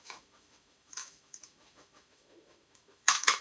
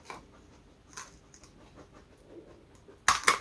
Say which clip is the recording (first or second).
second